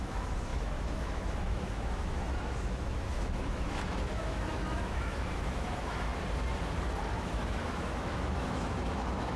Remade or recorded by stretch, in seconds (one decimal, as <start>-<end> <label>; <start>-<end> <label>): 0.0-6.1 remade; 6.1-7.1 recorded; 7.1-9.4 remade